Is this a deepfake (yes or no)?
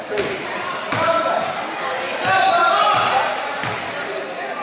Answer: no